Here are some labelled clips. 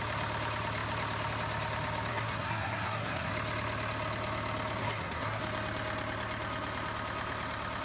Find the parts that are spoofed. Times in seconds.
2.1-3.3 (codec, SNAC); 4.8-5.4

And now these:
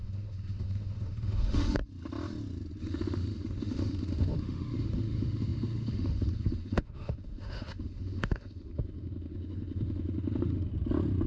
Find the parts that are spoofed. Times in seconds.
0.0-1.8 (autoencoder, DAC-VAE); 2.8-10.7

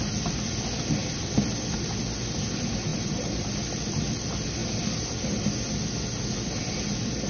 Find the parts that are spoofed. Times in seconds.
1.0-1.7 (vocoder, BigVGAN v2); 2.9-3.5

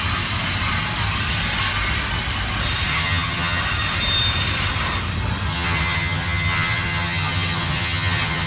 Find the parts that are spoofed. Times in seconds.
2.9-3.6 (vocoder, HiFi-GAN); 5.5-8.5